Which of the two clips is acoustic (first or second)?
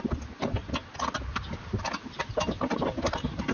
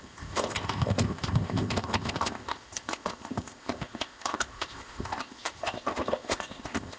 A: first